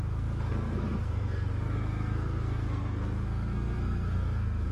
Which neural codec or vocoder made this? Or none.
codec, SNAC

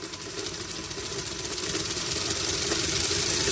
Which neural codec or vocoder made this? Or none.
none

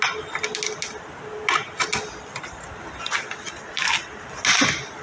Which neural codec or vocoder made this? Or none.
none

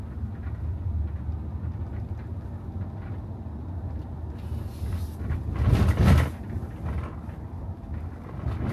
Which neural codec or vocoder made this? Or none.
none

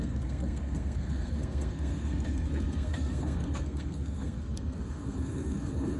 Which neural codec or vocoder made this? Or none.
codec, SNAC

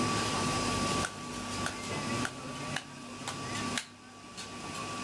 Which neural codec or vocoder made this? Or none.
none